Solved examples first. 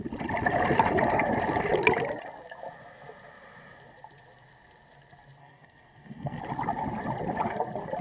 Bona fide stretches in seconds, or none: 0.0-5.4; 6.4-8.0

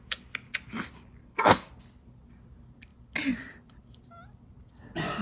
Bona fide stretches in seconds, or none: 0.0-1.2; 1.7-5.2

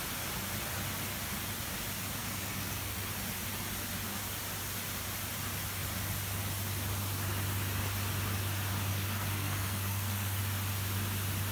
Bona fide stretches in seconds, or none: 0.0-2.2; 3.1-8.9; 10.4-11.5

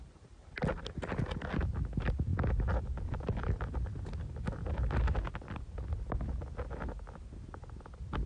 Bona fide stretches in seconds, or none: 0.0-8.3

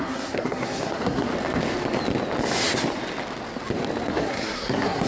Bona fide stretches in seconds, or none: 1.3-4.1